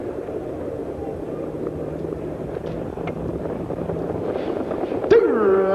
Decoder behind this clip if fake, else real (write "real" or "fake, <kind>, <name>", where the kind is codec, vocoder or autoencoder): fake, vocoder, BigVGAN v2